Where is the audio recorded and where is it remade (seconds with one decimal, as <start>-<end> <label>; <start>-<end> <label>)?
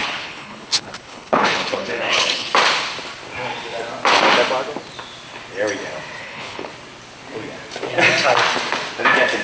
0.0-2.5 remade; 2.5-6.2 recorded; 6.2-6.7 remade; 6.7-9.4 recorded